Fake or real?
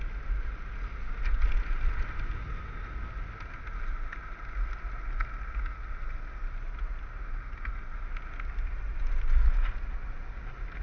real